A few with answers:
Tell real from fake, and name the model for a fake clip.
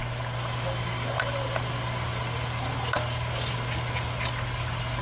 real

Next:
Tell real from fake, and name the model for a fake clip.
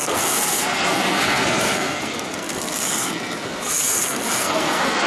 fake, codec, SNAC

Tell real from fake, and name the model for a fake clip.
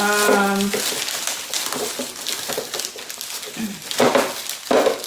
real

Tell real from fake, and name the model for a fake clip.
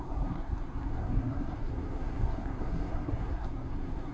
fake, codec, SNAC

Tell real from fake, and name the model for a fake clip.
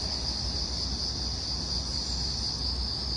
real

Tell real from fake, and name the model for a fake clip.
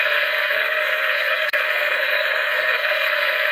fake, codec, SNAC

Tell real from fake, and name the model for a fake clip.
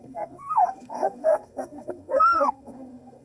fake, codec, SNAC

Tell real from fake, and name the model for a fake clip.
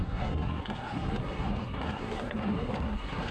fake, codec, SNAC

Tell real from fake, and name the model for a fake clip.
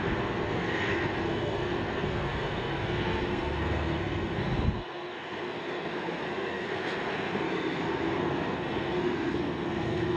fake, codec, SNAC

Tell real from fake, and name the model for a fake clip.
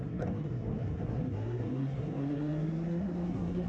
fake, codec, SNAC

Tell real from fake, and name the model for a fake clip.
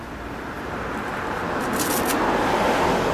real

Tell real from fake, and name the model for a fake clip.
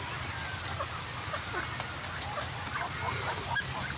real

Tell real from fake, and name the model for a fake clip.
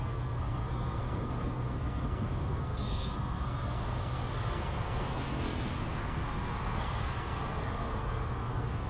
fake, codec, SNAC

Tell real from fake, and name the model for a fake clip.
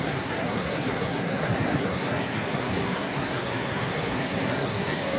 fake, codec, SNAC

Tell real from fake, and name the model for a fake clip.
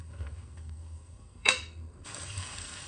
fake, codec, SNAC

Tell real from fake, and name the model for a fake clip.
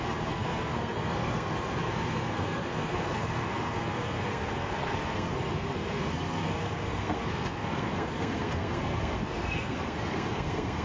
fake, codec, SNAC